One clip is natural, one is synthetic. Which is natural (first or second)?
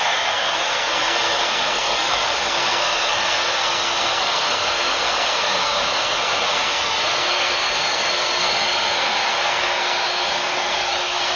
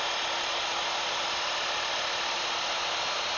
second